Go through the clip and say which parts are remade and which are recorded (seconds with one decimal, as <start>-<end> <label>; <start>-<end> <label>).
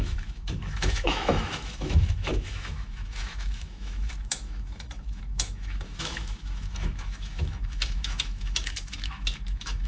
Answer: 0.0-9.9 remade